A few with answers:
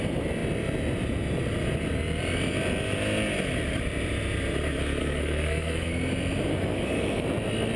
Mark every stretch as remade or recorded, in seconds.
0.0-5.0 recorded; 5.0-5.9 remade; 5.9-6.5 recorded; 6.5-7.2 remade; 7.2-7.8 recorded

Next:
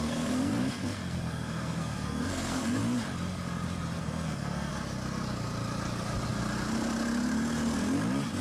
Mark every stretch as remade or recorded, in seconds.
0.0-2.8 remade; 2.8-4.0 recorded; 4.0-4.7 remade; 4.7-8.4 recorded

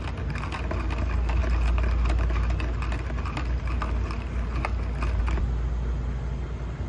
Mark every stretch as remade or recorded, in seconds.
0.0-6.9 recorded

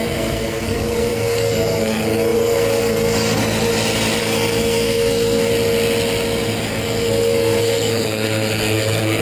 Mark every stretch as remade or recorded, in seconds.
0.0-3.4 remade; 3.4-4.2 recorded; 4.2-5.5 remade; 5.5-6.7 recorded; 6.7-9.2 remade

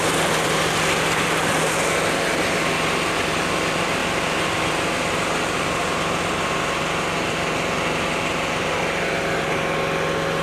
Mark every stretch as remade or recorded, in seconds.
0.0-10.4 recorded

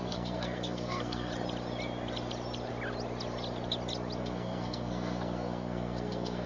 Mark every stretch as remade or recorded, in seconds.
0.0-1.3 remade; 1.3-4.2 recorded; 4.2-6.5 remade

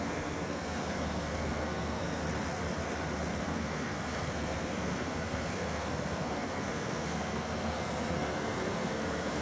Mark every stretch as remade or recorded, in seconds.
0.0-2.2 remade; 2.2-3.4 recorded; 3.4-9.4 remade